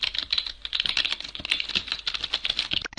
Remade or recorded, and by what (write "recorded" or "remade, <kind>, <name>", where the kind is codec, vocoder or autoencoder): recorded